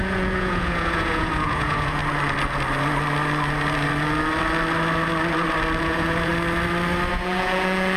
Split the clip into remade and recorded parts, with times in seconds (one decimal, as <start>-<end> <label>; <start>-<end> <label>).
0.0-2.0 remade; 2.0-5.8 recorded; 5.8-6.3 remade; 6.3-7.1 recorded; 7.1-8.0 remade